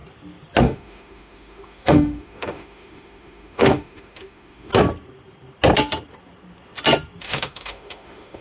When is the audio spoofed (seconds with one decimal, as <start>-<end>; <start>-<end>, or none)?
0.6-4.7; 7.2-8.4

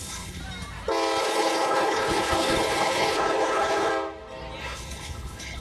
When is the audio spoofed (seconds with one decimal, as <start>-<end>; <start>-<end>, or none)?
0.0-0.4; 1.2-3.9; 4.6-5.6

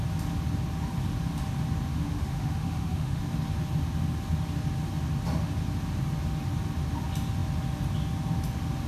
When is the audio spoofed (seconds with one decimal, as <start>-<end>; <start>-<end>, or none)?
1.9-3.2

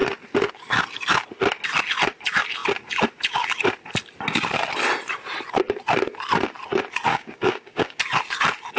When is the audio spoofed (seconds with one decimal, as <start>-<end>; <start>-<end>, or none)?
7.1-8.0

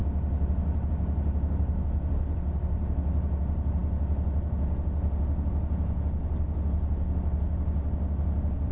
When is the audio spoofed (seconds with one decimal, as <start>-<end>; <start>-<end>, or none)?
none

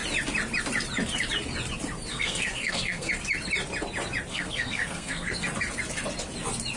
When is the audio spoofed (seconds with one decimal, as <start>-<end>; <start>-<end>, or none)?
2.1-3.1; 4.3-5.4

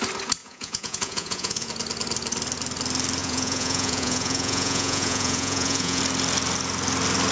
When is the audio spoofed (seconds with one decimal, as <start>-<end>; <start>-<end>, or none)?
0.4-1.7; 3.2-6.0

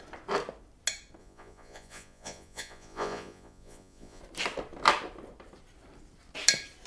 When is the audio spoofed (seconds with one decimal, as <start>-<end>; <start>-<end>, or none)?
1.2-4.2